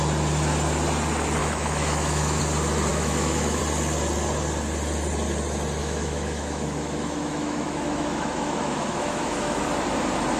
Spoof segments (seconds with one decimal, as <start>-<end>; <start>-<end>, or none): 1.4-2.4; 2.9-3.6; 5.8-9.6